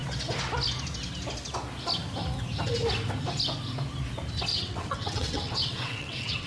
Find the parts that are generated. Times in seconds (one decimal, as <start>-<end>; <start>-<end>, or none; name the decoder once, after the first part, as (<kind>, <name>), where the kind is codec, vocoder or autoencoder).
4.5-6.5 (vocoder, WaveNeXt)